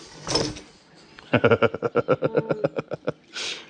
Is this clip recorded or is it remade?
recorded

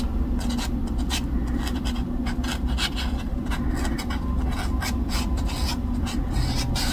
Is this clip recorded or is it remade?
recorded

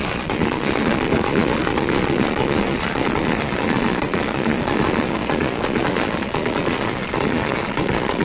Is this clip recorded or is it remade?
remade